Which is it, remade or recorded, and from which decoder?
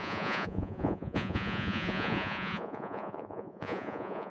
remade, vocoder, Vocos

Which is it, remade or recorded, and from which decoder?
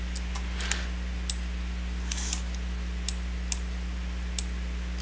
recorded